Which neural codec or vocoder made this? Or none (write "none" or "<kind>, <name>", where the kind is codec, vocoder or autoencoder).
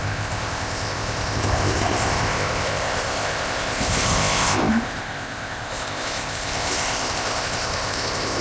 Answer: codec, ZipCodec